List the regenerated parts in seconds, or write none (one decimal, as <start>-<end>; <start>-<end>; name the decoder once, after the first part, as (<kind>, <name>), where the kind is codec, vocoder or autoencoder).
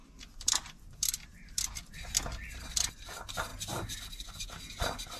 none